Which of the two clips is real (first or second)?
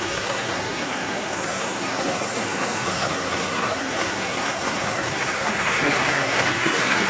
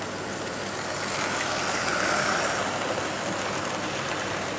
second